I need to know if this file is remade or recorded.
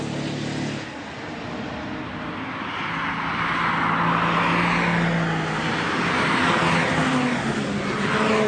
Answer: recorded